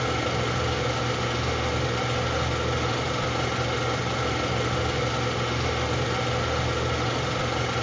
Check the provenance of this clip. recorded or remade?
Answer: recorded